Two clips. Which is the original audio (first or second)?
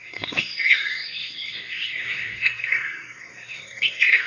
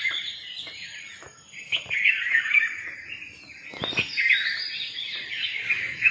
second